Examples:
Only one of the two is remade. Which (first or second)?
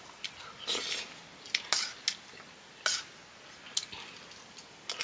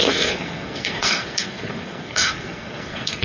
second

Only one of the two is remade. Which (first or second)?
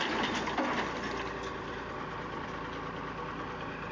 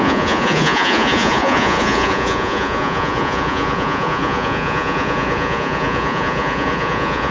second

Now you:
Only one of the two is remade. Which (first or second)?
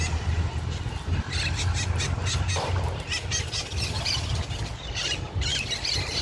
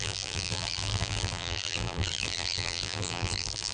second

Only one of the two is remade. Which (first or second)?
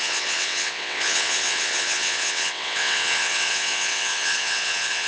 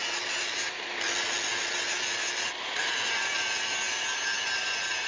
first